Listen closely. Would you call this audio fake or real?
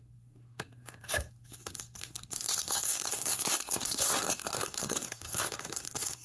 fake